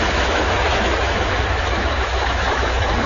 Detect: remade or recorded remade